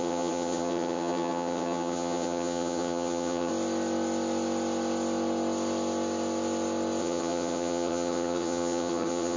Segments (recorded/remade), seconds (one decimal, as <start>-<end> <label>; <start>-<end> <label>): 0.0-3.5 remade; 3.5-7.0 recorded; 7.0-9.4 remade